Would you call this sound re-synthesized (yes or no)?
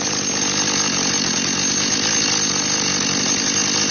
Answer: no